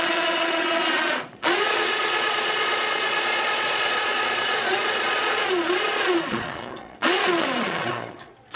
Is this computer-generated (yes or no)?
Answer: yes